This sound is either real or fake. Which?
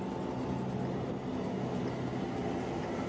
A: real